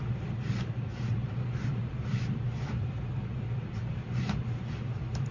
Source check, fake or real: fake